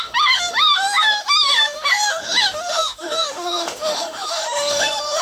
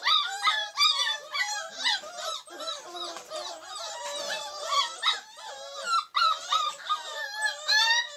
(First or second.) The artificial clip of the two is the first